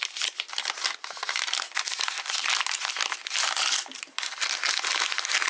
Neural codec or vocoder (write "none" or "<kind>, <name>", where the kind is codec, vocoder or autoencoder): none